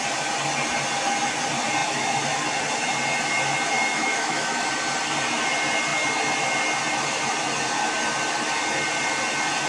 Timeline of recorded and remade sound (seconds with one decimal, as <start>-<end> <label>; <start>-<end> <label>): 0.0-3.9 recorded; 3.9-4.7 remade; 4.7-9.7 recorded